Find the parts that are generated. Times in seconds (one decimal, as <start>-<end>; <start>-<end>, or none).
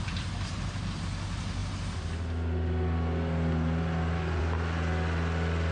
none